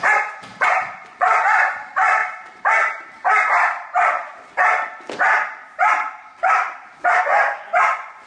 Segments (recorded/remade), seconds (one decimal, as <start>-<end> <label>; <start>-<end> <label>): 0.0-2.2 remade; 2.2-7.2 recorded; 7.2-8.3 remade